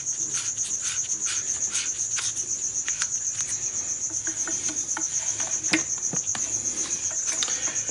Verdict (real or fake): real